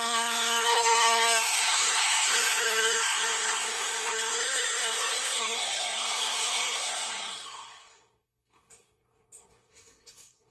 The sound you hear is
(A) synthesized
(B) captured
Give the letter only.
A